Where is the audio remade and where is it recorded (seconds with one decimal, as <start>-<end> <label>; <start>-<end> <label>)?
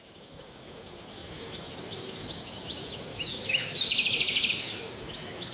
0.0-5.5 remade